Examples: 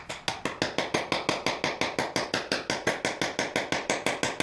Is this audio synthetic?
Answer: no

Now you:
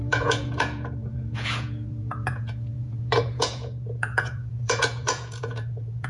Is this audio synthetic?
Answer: yes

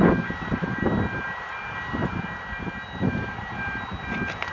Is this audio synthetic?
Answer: no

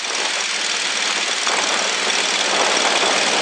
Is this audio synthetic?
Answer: no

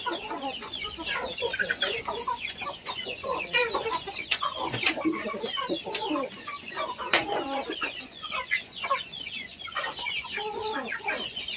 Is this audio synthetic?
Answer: yes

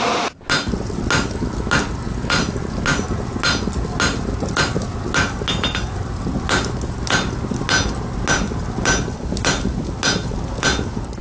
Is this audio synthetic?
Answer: no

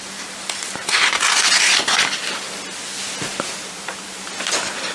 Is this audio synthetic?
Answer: no